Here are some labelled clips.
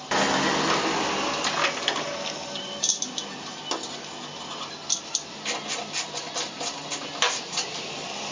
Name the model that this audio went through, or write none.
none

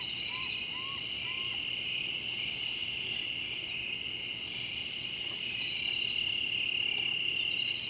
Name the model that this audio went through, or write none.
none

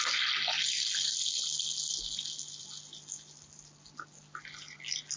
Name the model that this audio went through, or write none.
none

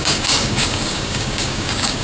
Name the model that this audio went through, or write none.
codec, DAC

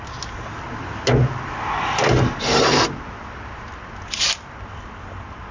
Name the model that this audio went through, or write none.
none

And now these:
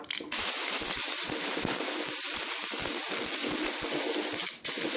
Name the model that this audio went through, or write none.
none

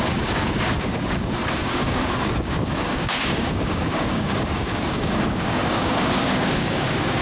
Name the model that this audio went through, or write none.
codec, DAC